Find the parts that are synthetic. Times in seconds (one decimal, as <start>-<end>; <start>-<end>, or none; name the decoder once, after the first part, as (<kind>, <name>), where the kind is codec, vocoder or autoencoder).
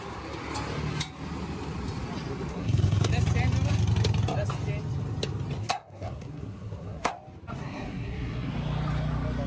2.5-3.1 (codec, SNAC); 5.6-7.1; 7.6-8.5